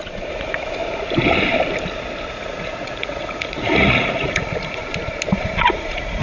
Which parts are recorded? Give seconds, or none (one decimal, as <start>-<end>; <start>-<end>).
0.8-2.3; 4.8-5.3